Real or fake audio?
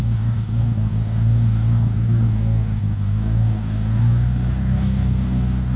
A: fake